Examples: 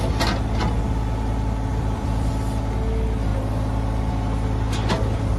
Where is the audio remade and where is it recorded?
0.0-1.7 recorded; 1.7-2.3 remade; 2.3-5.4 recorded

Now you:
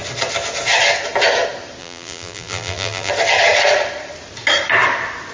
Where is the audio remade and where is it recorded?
0.0-1.8 recorded; 1.8-3.1 remade; 3.1-5.3 recorded

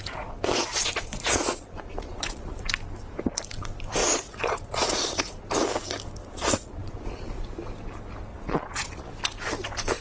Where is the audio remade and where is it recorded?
0.0-0.6 recorded; 0.6-2.6 remade; 2.6-4.0 recorded; 4.0-5.3 remade; 5.3-6.2 recorded; 6.2-7.4 remade; 7.4-8.3 recorded; 8.3-9.1 remade; 9.1-10.0 recorded

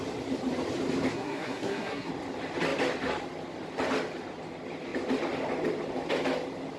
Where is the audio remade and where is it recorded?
0.0-1.1 recorded; 1.1-2.1 remade; 2.1-6.8 recorded

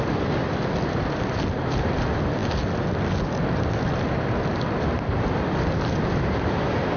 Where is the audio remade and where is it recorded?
0.0-7.0 recorded